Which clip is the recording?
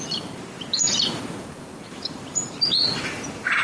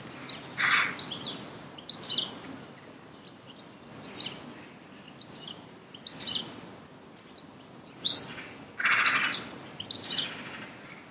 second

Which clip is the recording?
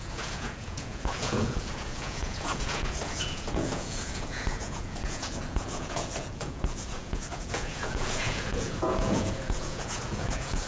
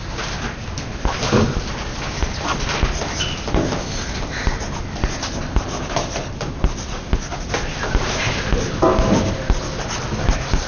second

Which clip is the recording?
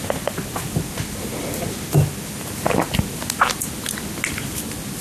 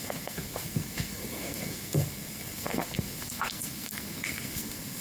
first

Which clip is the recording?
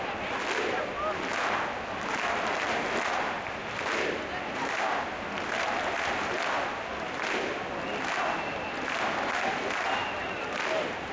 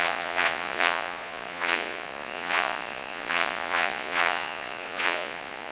first